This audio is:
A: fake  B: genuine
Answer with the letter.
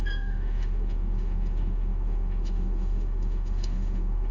A